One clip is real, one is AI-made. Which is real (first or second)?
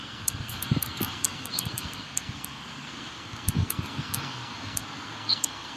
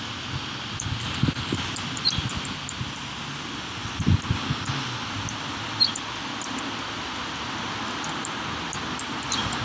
second